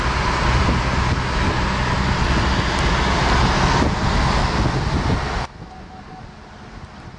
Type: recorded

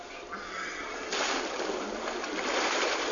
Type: recorded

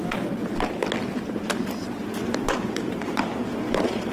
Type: recorded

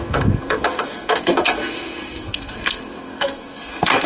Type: remade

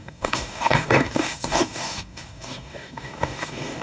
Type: remade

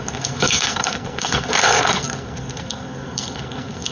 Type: remade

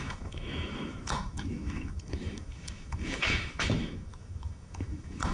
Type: remade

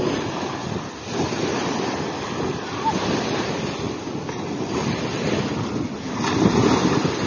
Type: recorded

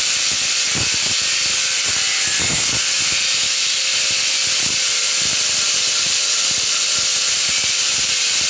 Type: recorded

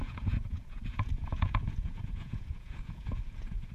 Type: remade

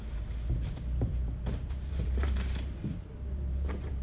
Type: remade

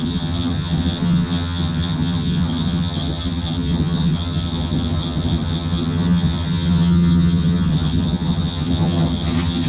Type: remade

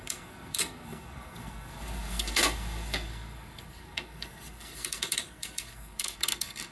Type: remade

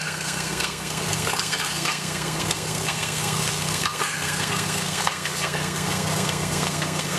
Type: remade